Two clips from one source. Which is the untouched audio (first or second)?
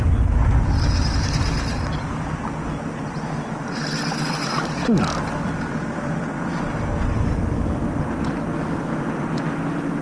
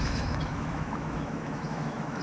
first